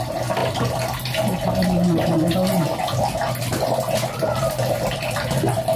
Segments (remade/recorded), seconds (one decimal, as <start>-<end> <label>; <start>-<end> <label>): 0.0-0.4 remade; 0.4-3.4 recorded; 3.4-5.8 remade